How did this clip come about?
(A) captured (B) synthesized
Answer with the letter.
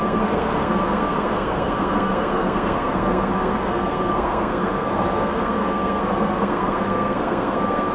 B